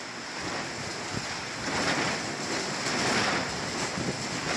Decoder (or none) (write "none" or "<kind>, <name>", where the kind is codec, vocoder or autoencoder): none